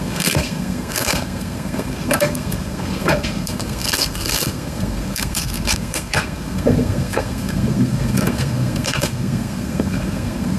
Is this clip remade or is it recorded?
remade